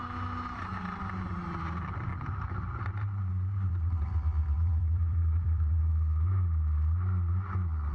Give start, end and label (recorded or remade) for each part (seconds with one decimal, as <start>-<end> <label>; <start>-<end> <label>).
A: 0.0-2.1 recorded; 2.1-5.8 remade; 5.8-7.9 recorded